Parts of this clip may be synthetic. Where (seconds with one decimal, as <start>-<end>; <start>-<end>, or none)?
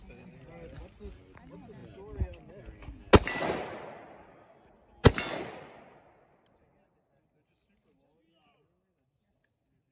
none